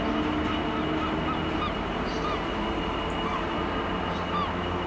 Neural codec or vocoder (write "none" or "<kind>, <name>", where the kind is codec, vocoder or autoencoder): none